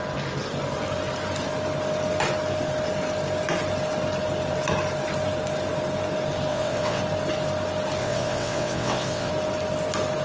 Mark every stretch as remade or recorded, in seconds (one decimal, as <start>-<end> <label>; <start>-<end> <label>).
0.0-6.5 recorded; 6.5-7.0 remade; 7.0-8.0 recorded; 8.0-9.3 remade; 9.3-10.2 recorded